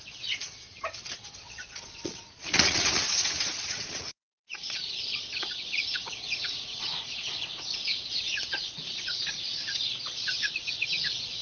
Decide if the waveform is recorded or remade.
remade